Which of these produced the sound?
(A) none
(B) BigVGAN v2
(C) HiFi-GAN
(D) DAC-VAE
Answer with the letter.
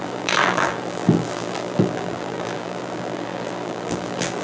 B